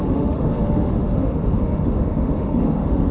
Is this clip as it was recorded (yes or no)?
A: no